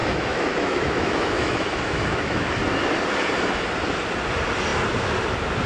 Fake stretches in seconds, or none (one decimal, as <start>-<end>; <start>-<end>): 0.0-2.5